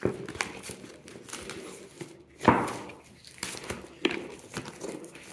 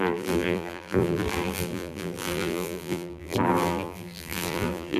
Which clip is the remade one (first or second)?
second